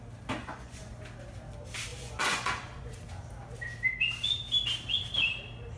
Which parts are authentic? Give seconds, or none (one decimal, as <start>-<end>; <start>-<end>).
0.0-0.4; 0.9-1.9; 2.9-5.8